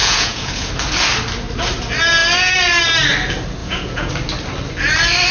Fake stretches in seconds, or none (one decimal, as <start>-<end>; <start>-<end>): 0.0-0.7; 3.6-4.1